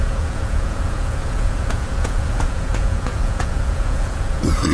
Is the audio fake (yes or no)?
yes